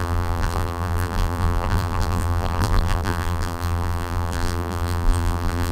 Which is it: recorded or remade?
remade